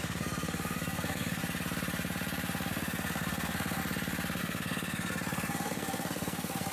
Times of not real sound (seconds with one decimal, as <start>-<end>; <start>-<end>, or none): 0.0-1.4; 2.7-3.8; 4.4-6.7